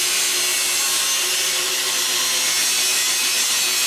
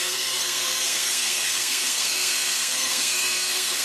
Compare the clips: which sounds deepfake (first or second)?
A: second